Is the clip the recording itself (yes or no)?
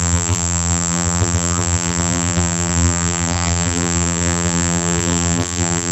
no